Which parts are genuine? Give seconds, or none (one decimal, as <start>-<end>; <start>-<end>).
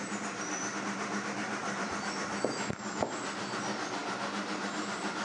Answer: 0.0-5.2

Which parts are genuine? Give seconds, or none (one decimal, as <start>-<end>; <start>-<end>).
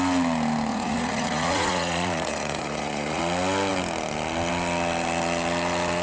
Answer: 0.0-0.7; 3.2-6.0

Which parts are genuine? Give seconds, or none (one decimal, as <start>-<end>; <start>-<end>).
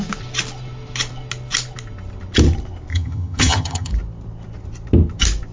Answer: 0.0-2.9; 3.9-5.5